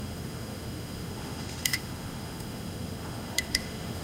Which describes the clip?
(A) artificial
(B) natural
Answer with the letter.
A